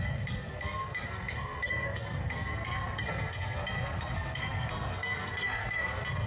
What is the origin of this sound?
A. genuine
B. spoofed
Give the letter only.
B